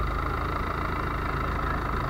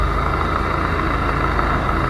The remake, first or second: second